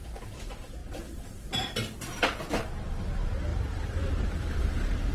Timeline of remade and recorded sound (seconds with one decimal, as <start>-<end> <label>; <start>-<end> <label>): 0.0-0.8 remade; 0.8-2.6 recorded; 2.6-5.1 remade